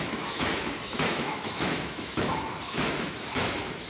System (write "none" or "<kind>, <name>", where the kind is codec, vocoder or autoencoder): autoencoder, DAC-VAE